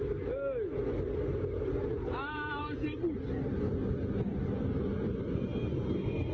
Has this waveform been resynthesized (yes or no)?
yes